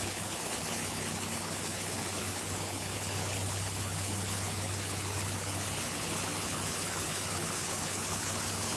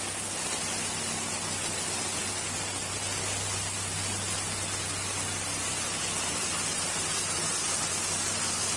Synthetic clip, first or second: first